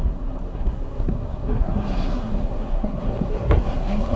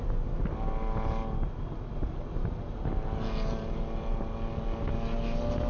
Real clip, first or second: second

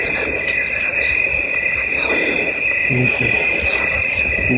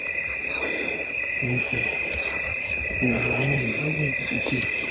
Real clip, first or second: first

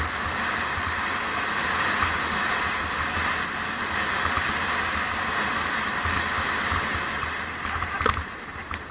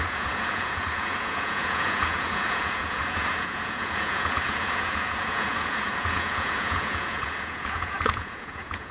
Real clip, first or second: first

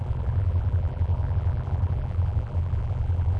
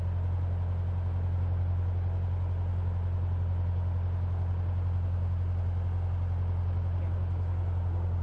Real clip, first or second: second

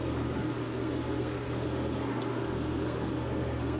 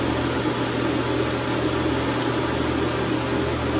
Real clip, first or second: second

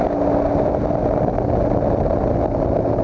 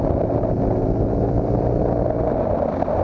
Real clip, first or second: first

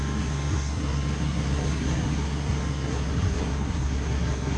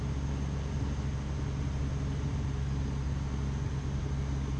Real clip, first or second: second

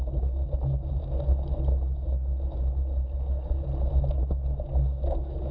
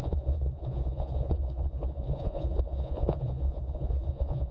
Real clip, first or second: first